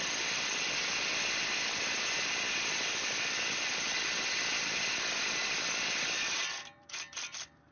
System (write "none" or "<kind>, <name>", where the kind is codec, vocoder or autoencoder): vocoder, BigVGAN v2